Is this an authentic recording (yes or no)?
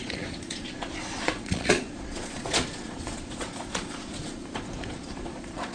no